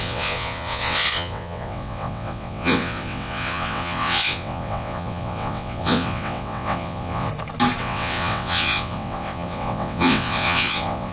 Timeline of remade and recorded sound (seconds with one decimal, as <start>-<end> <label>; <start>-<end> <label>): 0.0-7.3 remade; 7.3-7.8 recorded; 7.8-11.1 remade